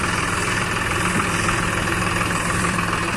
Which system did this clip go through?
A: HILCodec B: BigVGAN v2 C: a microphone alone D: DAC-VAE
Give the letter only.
B